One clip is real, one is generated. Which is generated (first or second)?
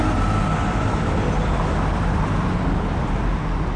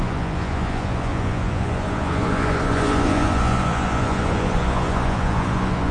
second